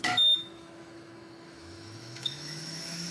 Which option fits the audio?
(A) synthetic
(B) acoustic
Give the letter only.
A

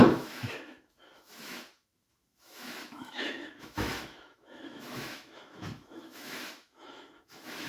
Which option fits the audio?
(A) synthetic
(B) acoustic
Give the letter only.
A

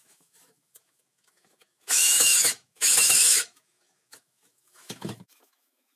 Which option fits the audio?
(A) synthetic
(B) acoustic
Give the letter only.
A